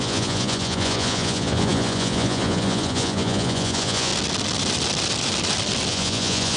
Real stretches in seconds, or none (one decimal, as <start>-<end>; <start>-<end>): 4.1-5.9